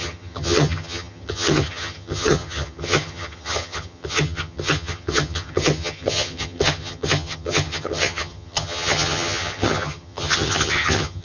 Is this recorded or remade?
remade